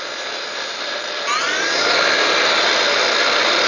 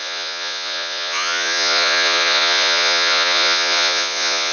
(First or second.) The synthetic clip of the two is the second